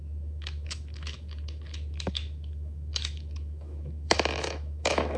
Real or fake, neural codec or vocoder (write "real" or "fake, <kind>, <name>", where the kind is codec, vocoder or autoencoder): fake, autoencoder, DAC-VAE